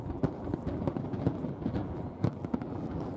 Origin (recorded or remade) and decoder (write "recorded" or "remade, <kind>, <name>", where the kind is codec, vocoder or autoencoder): remade, vocoder, BigVGAN v2